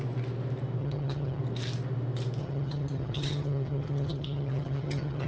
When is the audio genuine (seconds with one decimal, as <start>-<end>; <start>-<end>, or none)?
0.0-0.8; 1.4-2.4